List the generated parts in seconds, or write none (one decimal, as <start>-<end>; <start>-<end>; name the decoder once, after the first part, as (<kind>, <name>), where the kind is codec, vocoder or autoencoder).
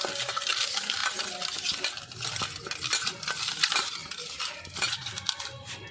4.0-5.0 (vocoder, BigVGAN v2)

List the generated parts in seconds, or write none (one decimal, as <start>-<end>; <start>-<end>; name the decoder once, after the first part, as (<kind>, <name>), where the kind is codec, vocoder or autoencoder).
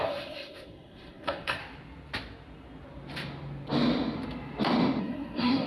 0.0-1.6 (codec, SNAC); 5.0-5.7